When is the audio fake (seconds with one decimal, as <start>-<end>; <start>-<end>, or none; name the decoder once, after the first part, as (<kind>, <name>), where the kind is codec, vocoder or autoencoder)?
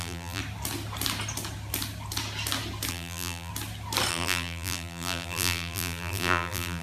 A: 0.0-0.4 (vocoder, BigVGAN v2); 2.9-3.5; 4.1-6.8